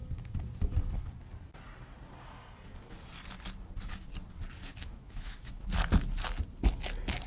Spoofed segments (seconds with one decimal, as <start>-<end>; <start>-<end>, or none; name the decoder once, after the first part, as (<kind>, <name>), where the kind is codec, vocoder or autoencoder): 4.7-5.7 (autoencoder, DAC-VAE)